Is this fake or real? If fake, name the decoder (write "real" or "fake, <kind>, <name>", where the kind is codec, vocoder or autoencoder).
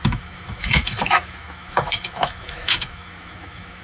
fake, autoencoder, DAC-VAE